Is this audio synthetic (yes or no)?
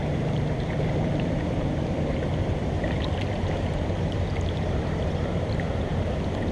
yes